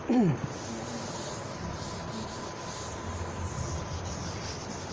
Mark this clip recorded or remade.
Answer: recorded